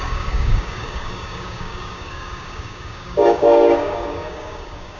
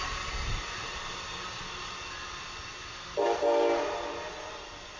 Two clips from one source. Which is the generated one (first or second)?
first